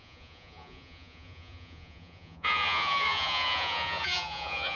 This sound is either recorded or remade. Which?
remade